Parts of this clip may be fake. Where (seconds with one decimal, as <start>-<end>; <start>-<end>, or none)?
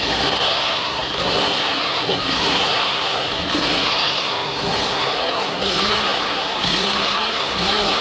0.0-8.0